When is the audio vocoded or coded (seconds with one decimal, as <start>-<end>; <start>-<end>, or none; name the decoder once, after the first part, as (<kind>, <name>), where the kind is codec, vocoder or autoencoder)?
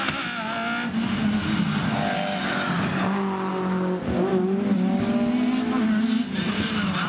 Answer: 1.8-2.9 (vocoder, BigVGAN v2); 4.3-4.9